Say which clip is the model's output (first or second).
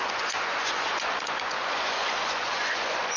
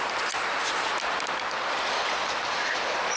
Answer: first